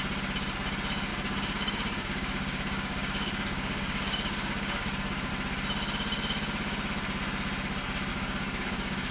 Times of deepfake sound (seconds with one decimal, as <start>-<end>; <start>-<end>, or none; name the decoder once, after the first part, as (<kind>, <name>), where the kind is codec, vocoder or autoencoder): 1.1-5.3 (codec, DAC); 8.1-9.1